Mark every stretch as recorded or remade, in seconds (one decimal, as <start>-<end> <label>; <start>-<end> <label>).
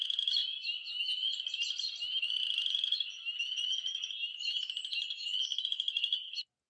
0.0-6.7 recorded